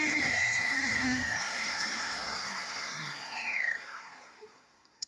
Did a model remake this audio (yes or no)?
yes